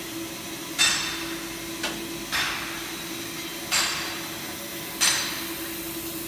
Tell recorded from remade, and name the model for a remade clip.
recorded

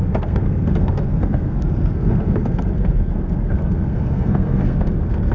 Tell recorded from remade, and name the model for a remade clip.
remade, codec, SNAC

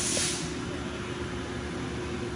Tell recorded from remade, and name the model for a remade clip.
recorded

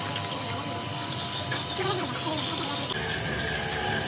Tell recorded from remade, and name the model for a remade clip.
recorded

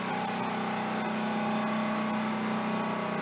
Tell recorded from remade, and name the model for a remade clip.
recorded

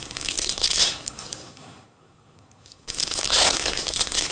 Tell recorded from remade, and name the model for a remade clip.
remade, codec, SNAC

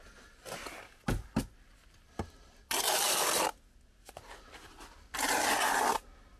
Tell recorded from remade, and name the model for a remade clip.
recorded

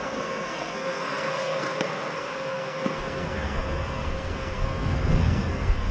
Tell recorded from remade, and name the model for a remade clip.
remade, codec, SNAC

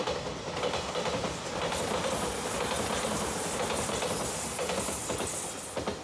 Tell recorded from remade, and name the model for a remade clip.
recorded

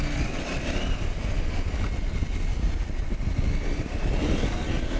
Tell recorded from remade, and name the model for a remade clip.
recorded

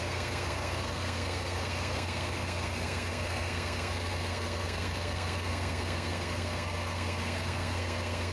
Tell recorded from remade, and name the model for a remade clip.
remade, codec, SNAC